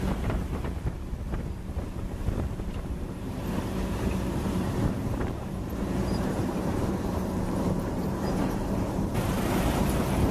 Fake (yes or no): yes